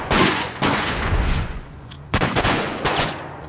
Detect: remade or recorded remade